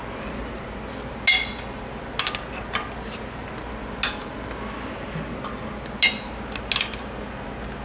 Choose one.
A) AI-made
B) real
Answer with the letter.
B